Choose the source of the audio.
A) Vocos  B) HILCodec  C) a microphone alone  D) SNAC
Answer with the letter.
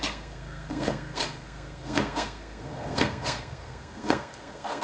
D